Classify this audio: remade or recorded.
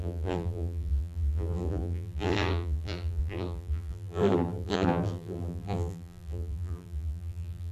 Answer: remade